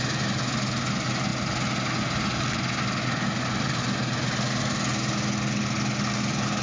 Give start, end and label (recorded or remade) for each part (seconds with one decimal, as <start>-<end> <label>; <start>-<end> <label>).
0.0-6.6 recorded